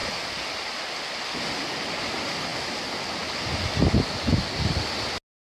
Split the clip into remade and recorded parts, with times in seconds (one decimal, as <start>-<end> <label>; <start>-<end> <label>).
0.0-5.5 recorded